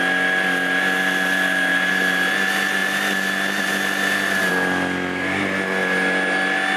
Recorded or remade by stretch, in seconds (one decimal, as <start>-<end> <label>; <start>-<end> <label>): 0.0-1.7 recorded; 1.7-2.3 remade; 2.3-6.8 recorded